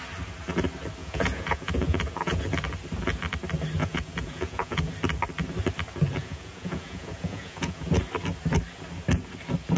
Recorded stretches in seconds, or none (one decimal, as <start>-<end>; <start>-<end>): 0.0-1.0; 2.4-3.8; 4.9-6.2; 8.0-9.8